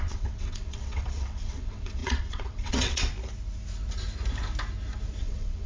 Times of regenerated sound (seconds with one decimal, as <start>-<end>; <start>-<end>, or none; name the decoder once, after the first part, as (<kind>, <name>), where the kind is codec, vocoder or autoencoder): 0.0-3.1 (vocoder, WaveNeXt); 5.2-5.7